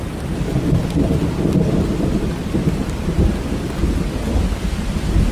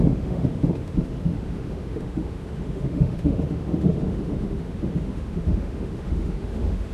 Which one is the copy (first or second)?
second